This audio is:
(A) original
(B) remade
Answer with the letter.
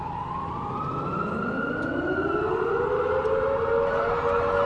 A